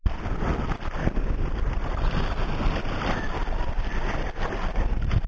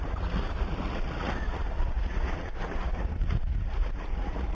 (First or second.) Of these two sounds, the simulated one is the second